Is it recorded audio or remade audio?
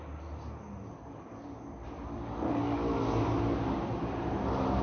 recorded